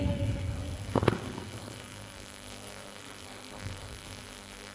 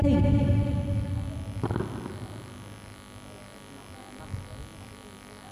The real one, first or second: second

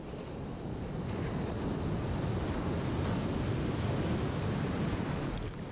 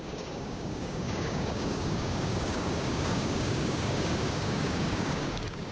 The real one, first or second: first